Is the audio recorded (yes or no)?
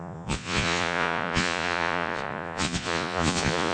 no